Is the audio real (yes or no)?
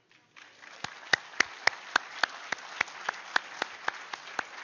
yes